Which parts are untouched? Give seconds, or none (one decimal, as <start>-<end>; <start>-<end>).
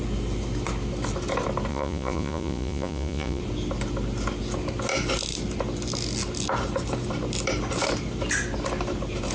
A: 0.0-1.7; 3.4-9.3